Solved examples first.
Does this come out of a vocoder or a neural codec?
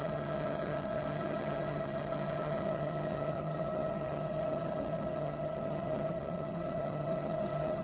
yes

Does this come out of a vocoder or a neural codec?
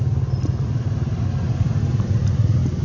no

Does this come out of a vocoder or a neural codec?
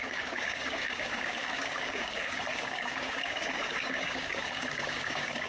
yes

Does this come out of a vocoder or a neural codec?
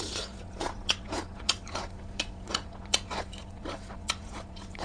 yes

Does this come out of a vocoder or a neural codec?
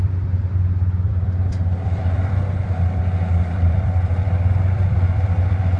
yes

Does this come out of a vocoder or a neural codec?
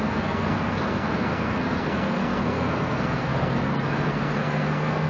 yes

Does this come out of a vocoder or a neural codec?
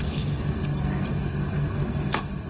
yes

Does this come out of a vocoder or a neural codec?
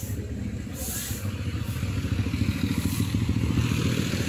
no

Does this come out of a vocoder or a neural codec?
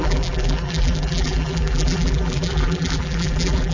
yes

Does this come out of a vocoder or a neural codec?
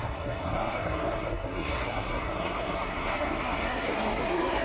yes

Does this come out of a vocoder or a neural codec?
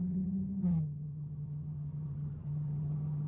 yes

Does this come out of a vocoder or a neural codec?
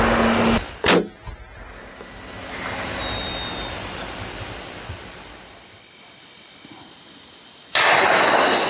no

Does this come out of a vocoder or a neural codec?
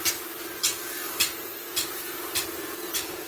no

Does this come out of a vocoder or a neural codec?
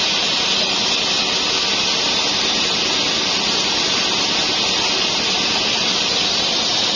no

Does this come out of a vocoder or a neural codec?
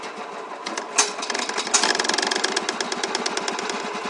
no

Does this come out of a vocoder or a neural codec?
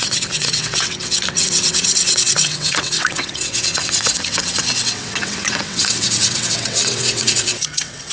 yes